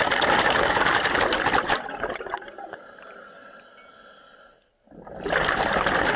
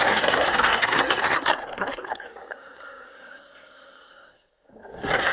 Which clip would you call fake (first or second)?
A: second